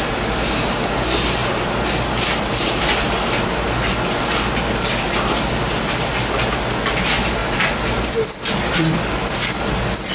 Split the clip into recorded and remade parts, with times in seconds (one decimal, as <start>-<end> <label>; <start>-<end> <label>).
0.0-10.1 recorded